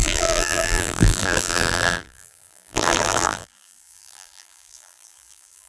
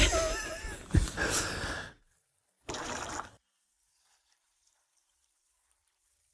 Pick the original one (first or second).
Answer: second